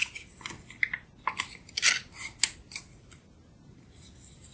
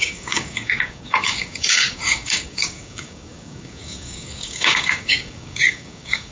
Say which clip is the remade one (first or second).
second